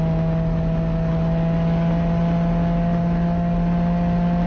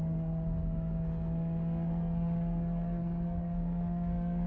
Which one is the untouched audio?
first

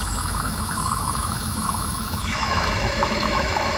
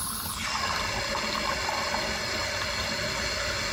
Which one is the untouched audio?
second